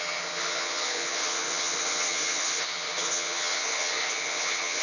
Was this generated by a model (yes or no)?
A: yes